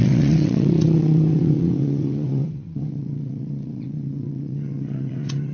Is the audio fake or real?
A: fake